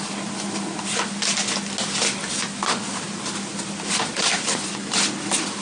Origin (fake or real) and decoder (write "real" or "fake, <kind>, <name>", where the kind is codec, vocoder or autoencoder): real